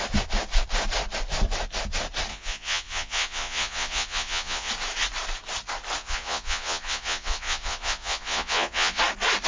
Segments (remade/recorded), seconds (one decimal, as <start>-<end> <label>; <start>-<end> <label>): 0.0-2.3 recorded; 2.3-4.7 remade; 4.7-6.0 recorded; 6.0-9.0 remade; 9.0-9.5 recorded